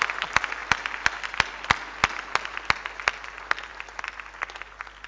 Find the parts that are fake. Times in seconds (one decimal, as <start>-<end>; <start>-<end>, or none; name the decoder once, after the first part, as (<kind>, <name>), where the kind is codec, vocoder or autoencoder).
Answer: none